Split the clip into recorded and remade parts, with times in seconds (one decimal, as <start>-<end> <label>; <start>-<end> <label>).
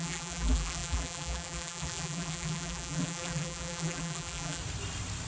0.0-4.6 remade; 4.6-5.3 recorded